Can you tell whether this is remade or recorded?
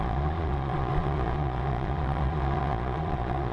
remade